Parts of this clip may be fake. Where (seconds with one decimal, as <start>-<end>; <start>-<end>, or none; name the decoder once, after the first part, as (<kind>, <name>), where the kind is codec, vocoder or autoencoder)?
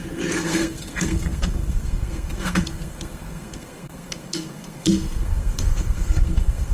0.0-6.7 (codec, SNAC)